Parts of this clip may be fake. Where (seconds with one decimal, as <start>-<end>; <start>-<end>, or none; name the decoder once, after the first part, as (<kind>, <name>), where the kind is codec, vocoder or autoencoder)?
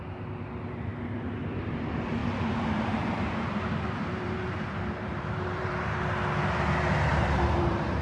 2.2-6.1 (vocoder, BigVGAN v2); 7.1-8.0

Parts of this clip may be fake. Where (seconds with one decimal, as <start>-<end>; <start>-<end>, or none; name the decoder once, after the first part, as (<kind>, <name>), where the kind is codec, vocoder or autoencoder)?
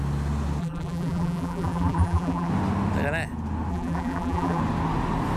0.6-2.5 (vocoder, BigVGAN v2); 3.7-4.6